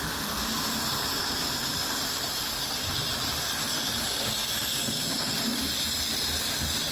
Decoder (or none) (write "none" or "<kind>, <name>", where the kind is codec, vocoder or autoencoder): none